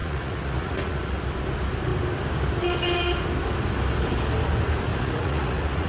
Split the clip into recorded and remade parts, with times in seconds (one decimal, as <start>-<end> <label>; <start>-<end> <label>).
0.0-1.2 remade; 1.2-4.9 recorded; 4.9-5.9 remade